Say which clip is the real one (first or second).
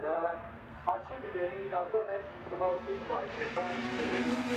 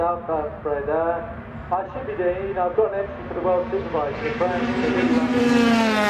second